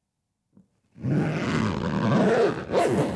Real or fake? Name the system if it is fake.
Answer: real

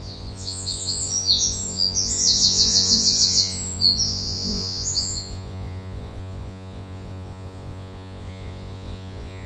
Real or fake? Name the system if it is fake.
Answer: fake, vocoder, Vocos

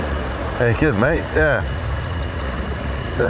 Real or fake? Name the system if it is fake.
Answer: fake, vocoder, Vocos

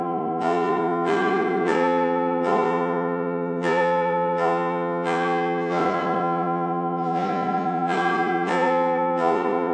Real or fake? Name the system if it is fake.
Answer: fake, vocoder, Vocos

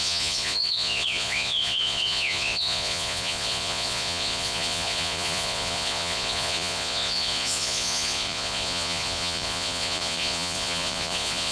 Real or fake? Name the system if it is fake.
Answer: fake, vocoder, Vocos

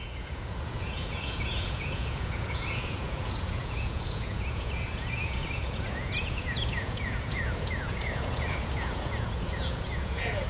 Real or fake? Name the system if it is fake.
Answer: fake, vocoder, Vocos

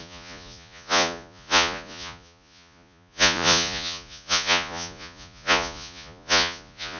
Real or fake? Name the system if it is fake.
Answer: fake, vocoder, Vocos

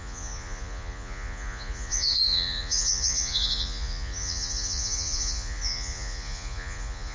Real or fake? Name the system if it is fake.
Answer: fake, vocoder, Vocos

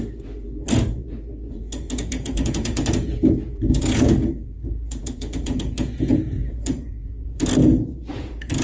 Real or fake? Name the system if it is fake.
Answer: fake, vocoder, Vocos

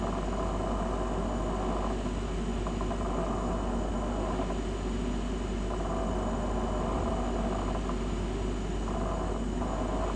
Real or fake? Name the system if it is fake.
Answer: real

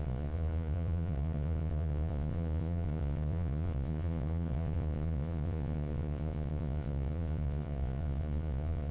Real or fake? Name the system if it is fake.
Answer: fake, vocoder, Vocos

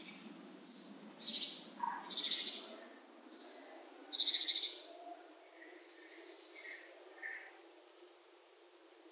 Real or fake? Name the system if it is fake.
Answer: real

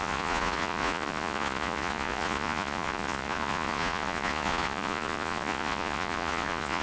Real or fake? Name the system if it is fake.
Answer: fake, vocoder, Vocos